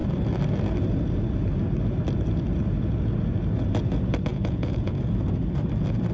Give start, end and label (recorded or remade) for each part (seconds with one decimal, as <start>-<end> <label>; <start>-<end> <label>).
0.0-4.3 recorded; 4.3-5.0 remade; 5.0-6.1 recorded